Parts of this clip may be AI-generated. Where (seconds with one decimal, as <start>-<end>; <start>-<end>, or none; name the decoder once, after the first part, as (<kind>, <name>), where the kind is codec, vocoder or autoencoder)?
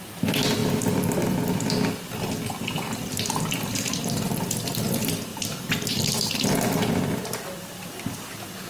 none